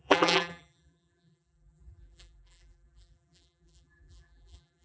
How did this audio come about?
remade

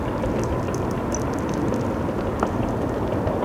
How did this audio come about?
recorded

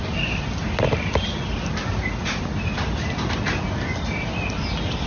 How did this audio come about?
recorded